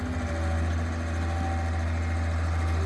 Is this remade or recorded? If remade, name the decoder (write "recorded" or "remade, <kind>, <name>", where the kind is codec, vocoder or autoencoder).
recorded